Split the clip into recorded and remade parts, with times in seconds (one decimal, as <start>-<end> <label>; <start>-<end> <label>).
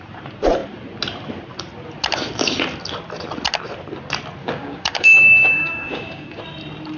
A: 0.0-4.4 recorded; 4.4-6.4 remade; 6.4-7.0 recorded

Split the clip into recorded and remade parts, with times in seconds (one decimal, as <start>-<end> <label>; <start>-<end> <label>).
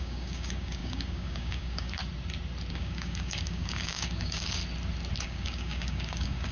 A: 0.0-2.0 remade; 2.0-2.7 recorded; 2.7-4.6 remade; 4.6-5.2 recorded; 5.2-6.5 remade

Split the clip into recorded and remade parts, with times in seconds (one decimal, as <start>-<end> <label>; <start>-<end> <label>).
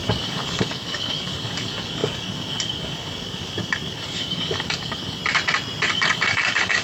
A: 0.0-5.2 remade; 5.2-5.9 recorded; 5.9-6.8 remade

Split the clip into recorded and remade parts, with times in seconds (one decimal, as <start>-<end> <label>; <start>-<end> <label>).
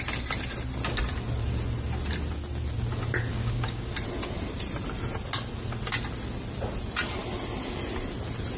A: 0.0-3.3 recorded; 3.3-3.9 remade; 3.9-8.6 recorded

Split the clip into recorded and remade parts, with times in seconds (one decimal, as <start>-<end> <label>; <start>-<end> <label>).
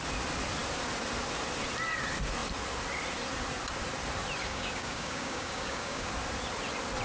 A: 0.0-4.4 recorded; 4.4-6.1 remade; 6.1-7.0 recorded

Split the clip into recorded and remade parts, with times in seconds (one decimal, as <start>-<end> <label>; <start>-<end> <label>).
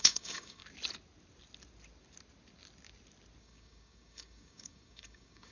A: 0.0-0.6 remade; 0.6-3.4 recorded; 3.4-5.5 remade